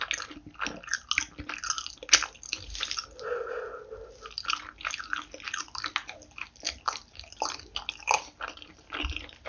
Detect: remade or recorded recorded